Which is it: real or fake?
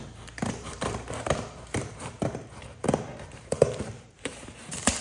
fake